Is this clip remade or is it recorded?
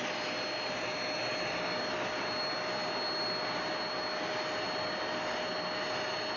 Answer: recorded